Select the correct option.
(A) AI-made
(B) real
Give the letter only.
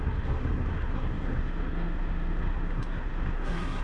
A